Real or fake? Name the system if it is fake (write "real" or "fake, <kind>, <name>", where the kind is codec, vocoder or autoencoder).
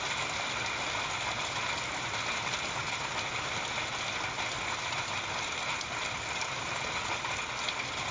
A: real